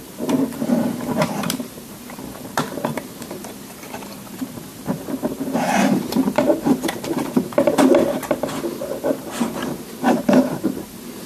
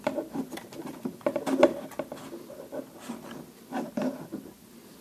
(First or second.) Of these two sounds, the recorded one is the second